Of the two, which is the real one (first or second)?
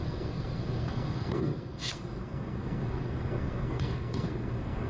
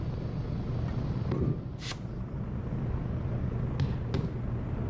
second